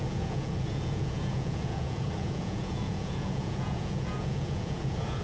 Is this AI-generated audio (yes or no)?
yes